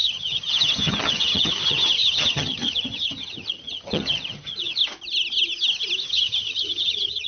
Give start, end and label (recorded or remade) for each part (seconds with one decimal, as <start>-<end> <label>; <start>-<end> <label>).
0.0-4.8 remade; 4.8-6.1 recorded; 6.1-7.3 remade